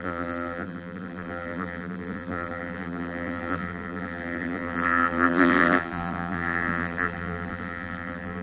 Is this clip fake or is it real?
fake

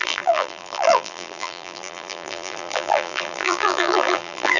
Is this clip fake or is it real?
fake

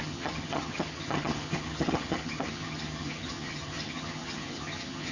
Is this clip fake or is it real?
fake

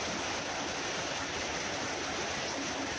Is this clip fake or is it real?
real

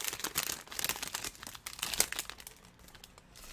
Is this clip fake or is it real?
real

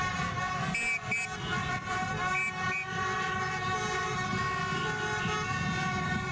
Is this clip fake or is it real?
real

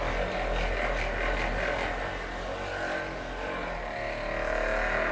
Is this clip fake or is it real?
real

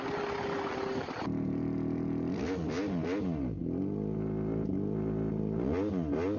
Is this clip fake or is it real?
real